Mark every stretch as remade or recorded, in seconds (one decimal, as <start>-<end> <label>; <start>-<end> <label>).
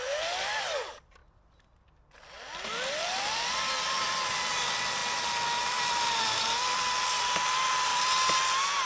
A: 0.0-1.2 remade; 1.2-3.0 recorded; 3.0-5.0 remade; 5.0-5.6 recorded; 5.6-7.9 remade; 7.9-8.9 recorded